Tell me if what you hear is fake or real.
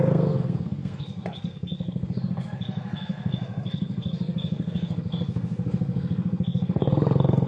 fake